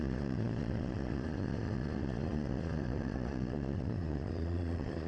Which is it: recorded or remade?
remade